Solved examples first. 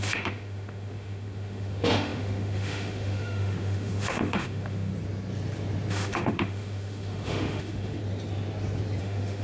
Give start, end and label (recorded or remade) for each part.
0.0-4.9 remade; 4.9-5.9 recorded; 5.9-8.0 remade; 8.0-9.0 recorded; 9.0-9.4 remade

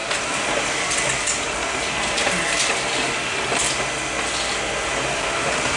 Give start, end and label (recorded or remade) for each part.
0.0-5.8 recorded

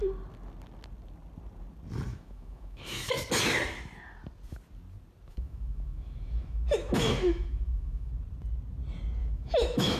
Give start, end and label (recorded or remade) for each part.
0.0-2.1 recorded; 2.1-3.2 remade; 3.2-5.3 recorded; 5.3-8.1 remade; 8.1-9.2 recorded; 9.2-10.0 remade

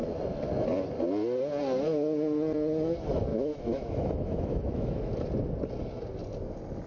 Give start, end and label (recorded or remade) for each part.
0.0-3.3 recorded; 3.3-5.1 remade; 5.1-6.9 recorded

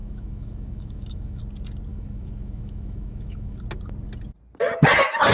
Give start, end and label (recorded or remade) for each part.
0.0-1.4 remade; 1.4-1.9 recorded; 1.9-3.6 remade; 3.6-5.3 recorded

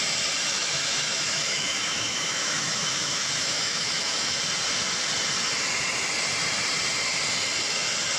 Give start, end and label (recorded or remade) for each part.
0.0-0.5 recorded; 0.5-4.4 remade; 4.4-8.2 recorded